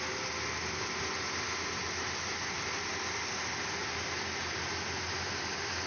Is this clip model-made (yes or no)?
no